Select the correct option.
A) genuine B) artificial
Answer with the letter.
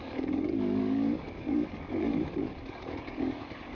B